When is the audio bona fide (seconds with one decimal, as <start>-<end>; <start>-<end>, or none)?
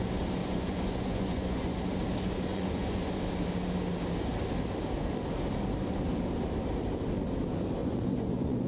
0.0-0.4; 1.8-2.5; 3.2-7.8